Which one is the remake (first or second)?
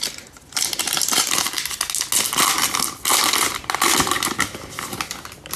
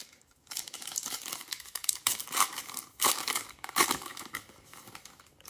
second